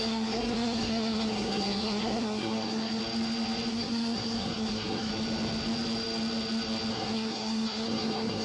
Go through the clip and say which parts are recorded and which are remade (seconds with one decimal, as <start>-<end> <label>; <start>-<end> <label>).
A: 0.0-3.0 remade; 3.0-3.7 recorded; 3.7-5.1 remade; 5.1-6.9 recorded; 6.9-8.4 remade